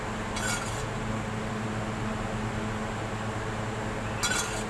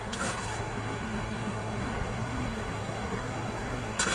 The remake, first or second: second